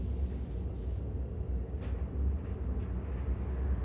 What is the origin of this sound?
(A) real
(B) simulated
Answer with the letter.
A